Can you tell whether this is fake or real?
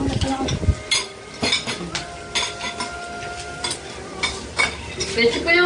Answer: real